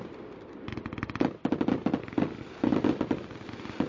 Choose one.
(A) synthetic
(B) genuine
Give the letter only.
B